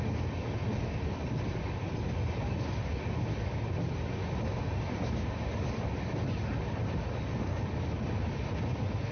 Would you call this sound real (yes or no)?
yes